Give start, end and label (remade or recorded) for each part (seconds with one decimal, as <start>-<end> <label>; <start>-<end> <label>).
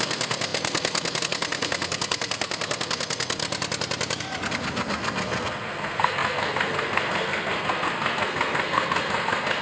0.0-3.4 remade; 3.4-4.5 recorded; 4.5-9.6 remade